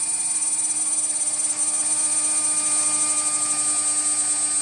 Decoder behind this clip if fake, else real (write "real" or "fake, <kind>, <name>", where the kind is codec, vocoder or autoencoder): real